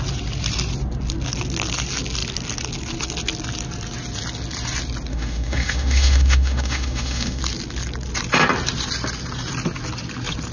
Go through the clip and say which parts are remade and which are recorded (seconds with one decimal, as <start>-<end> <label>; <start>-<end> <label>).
0.0-5.1 recorded; 5.1-7.4 remade; 7.4-10.5 recorded